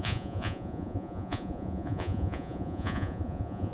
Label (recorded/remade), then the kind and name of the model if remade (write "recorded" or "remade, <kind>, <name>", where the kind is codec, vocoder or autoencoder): remade, vocoder, Vocos